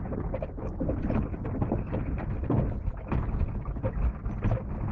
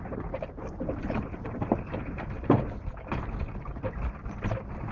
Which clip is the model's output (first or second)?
second